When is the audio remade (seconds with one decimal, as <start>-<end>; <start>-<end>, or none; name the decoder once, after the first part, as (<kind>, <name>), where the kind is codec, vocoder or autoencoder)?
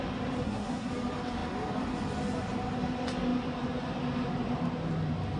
0.4-0.9 (codec, SNAC)